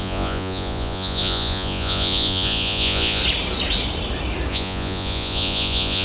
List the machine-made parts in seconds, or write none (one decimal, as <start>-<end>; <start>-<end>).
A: 0.0-3.2; 4.5-6.0